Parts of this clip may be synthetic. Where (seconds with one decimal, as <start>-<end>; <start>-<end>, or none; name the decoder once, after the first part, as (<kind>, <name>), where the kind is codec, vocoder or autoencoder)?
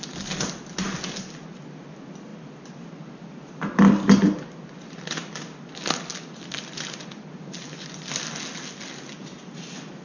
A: none